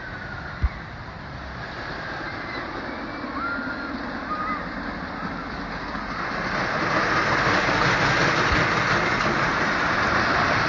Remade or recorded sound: recorded